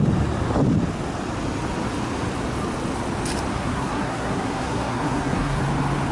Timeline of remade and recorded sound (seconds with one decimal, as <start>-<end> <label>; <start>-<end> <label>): 0.0-3.5 recorded; 3.5-5.6 remade; 5.6-6.1 recorded